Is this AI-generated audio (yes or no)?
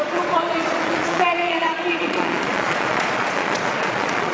yes